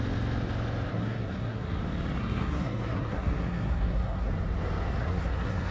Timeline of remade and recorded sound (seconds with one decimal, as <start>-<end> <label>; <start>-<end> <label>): 0.0-0.9 recorded; 0.9-1.8 remade; 1.8-2.2 recorded; 2.2-4.3 remade; 4.3-5.0 recorded; 5.0-5.7 remade